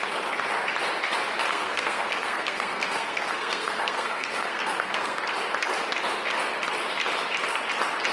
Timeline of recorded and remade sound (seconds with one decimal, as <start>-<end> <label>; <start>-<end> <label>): 0.0-1.5 recorded; 1.5-5.2 remade; 5.2-8.1 recorded